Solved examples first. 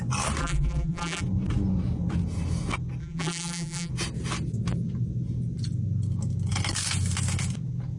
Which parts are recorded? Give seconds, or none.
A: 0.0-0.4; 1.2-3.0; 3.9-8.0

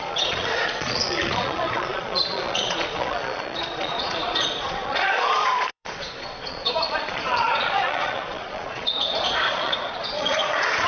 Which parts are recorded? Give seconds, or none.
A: none